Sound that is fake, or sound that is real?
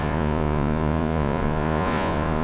fake